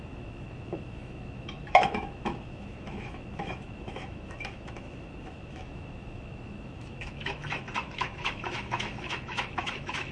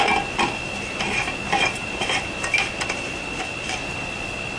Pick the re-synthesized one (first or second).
first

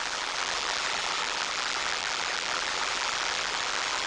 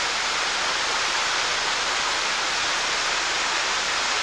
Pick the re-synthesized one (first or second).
first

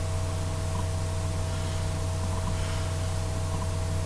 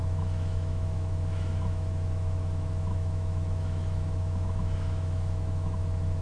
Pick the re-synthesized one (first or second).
second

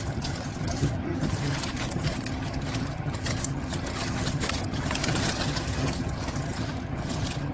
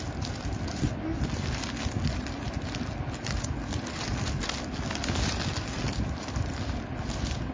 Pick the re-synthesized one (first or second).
first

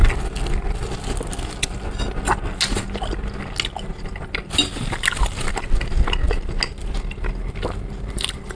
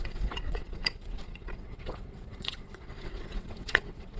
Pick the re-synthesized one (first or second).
second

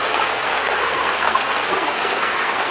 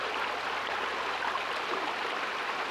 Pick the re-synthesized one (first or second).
first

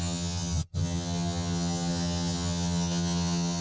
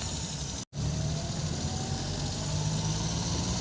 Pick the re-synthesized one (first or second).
first